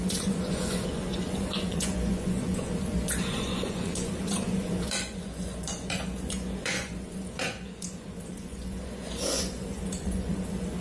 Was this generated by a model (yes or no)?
yes